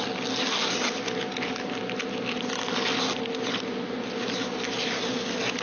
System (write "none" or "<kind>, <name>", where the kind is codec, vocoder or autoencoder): none